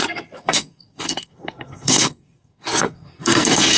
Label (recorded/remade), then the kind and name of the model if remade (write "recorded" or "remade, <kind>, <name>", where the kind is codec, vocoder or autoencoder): remade, codec, SNAC